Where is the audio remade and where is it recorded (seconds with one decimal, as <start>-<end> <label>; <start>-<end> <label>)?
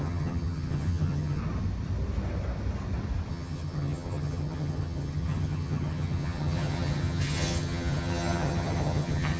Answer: 0.0-1.4 remade; 1.4-3.3 recorded; 3.3-9.4 remade